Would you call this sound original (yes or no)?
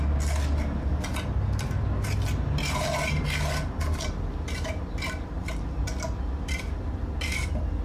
yes